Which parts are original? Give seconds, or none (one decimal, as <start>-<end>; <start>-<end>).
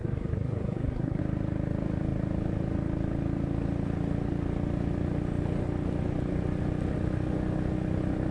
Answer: 1.2-8.3